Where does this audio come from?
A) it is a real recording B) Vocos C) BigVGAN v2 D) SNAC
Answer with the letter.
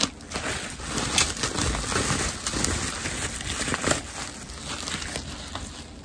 A